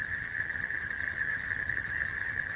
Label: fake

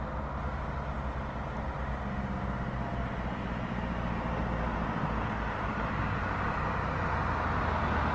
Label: real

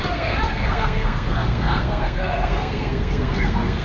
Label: fake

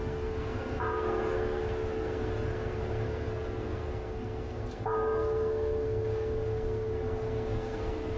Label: fake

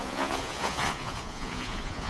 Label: fake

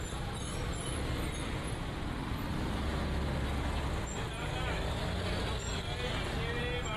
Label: real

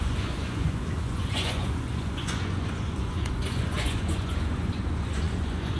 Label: fake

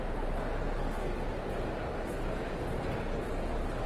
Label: real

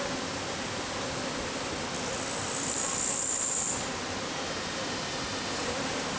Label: real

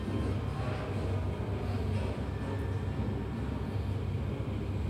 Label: real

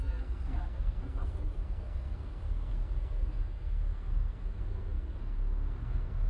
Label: fake